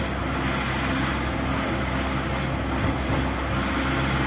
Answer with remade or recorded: recorded